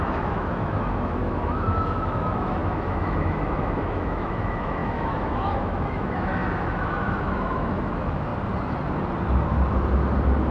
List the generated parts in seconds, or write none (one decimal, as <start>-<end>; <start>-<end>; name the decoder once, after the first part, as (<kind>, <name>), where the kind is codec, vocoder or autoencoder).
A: 0.0-8.3 (autoencoder, DAC-VAE)